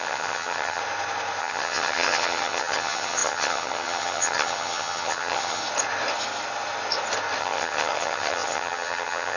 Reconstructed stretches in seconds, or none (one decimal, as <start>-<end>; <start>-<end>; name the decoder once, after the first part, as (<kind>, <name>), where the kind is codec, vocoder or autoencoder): 0.0-0.8 (vocoder, HiFi-GAN); 1.4-5.6; 7.4-9.4